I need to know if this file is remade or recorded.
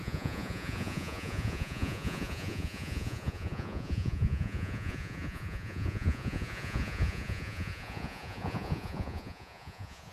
remade